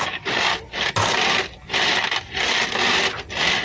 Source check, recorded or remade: recorded